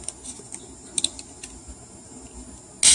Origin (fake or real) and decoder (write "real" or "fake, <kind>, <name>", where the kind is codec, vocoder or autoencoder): real